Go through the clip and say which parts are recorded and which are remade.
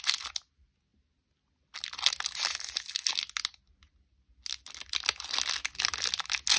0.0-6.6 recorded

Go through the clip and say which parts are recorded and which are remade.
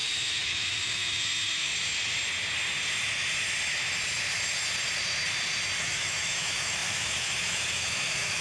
0.0-1.7 remade; 1.7-5.8 recorded; 5.8-8.4 remade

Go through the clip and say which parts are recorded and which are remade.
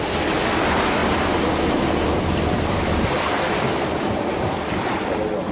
0.0-5.5 recorded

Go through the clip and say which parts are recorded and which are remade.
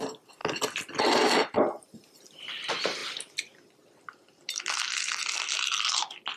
0.0-1.4 recorded; 1.4-2.2 remade; 2.2-3.0 recorded; 3.0-4.6 remade; 4.6-6.4 recorded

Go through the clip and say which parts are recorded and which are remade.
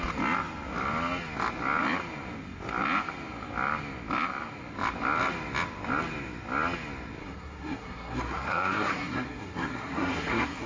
0.0-7.2 recorded; 7.2-10.7 remade